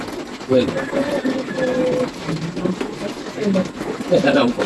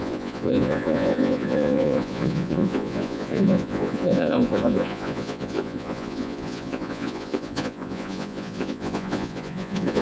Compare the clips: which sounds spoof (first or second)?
second